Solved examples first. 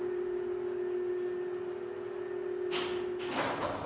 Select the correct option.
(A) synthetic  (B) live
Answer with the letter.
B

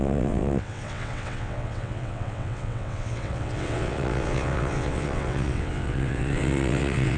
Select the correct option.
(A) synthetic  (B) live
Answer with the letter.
A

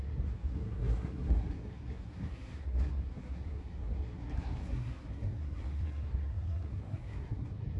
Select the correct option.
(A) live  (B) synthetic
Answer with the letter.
B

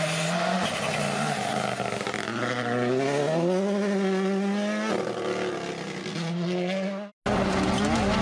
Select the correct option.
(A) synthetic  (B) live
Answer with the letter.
B